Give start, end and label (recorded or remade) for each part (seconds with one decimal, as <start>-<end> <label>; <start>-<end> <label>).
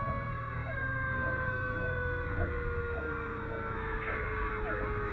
0.0-4.5 remade; 4.5-5.1 recorded